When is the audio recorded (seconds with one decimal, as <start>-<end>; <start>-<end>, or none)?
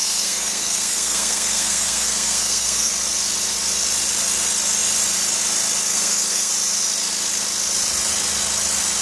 2.9-5.9; 6.5-9.0